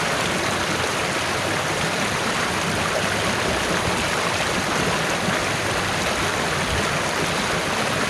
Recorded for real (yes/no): yes